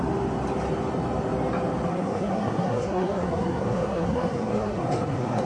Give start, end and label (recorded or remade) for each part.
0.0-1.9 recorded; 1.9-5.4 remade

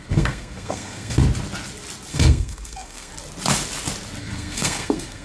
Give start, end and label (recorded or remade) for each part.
0.0-1.2 remade; 1.2-2.1 recorded; 2.1-3.1 remade; 3.1-4.2 recorded; 4.2-5.2 remade